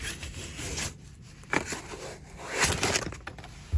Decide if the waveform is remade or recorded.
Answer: recorded